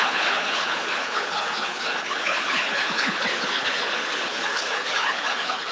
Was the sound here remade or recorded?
remade